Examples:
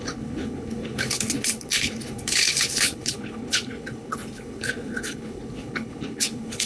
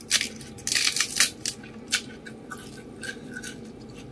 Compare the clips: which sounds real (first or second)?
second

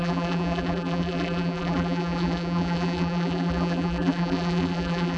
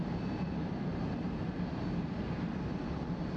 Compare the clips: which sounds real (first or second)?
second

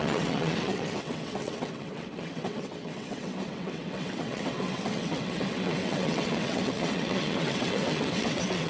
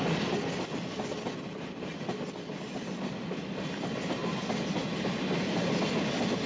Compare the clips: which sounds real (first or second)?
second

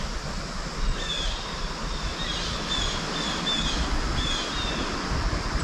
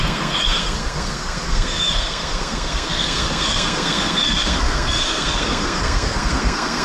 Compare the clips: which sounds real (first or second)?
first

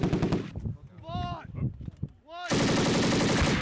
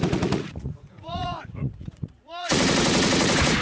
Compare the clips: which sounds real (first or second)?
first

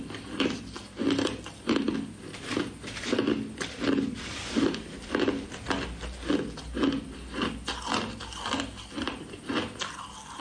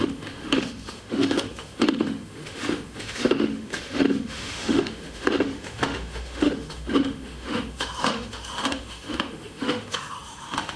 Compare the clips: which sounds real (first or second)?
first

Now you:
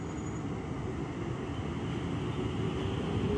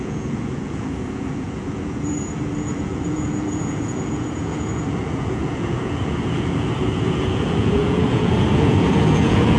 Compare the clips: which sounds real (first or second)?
first